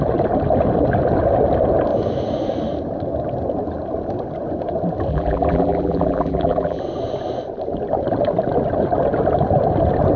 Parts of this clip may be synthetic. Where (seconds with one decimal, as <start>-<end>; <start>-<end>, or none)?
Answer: 5.1-6.8